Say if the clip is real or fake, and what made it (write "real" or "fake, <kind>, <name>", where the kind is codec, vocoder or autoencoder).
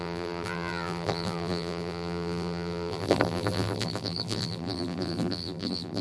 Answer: fake, vocoder, BigVGAN v2